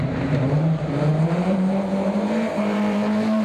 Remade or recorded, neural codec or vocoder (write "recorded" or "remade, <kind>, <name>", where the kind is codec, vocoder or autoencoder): remade, vocoder, BigVGAN v2